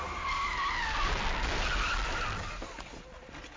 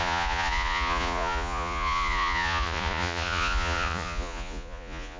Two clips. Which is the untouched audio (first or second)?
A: first